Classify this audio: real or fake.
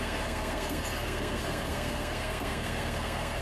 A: fake